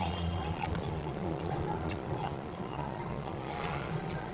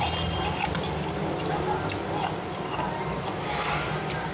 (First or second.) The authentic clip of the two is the second